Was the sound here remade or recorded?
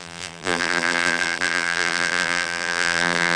remade